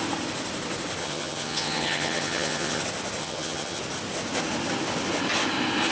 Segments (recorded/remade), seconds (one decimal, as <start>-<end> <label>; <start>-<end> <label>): 0.0-1.0 recorded; 1.0-2.8 remade; 2.8-3.2 recorded; 3.2-3.8 remade; 3.8-5.9 recorded